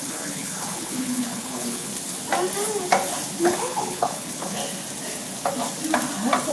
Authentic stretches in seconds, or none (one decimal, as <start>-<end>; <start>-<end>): 1.9-3.4; 4.6-6.5